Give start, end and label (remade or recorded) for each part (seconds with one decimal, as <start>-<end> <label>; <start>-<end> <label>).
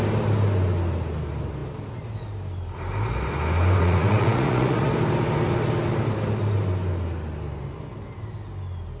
0.0-3.8 recorded; 3.8-4.9 remade; 4.9-9.0 recorded